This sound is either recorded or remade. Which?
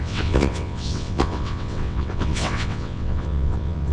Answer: remade